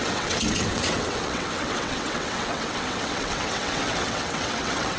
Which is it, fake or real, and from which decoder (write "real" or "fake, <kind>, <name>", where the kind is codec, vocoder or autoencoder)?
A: fake, vocoder, WaveNeXt